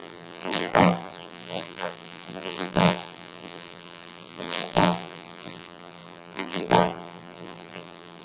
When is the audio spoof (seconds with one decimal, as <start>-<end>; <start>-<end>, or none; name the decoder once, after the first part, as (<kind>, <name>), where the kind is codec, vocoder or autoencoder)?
0.0-8.2 (vocoder, BigVGAN v2)